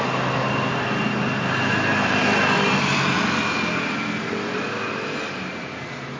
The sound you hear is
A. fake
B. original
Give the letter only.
B